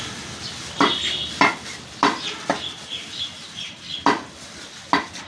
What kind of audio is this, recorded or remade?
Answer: recorded